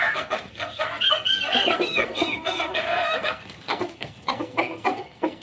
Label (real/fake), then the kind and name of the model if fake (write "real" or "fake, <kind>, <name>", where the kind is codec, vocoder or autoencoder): fake, codec, SNAC